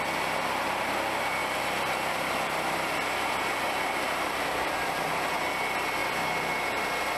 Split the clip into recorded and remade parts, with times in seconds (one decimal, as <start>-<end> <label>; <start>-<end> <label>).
0.0-1.4 recorded; 1.4-5.5 remade; 5.5-6.0 recorded; 6.0-6.8 remade; 6.8-7.2 recorded